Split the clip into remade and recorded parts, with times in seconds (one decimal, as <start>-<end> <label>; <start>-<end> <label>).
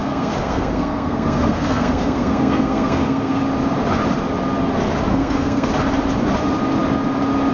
0.0-3.4 remade; 3.4-5.1 recorded; 5.1-5.7 remade; 5.7-7.5 recorded